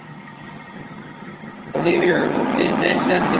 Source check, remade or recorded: remade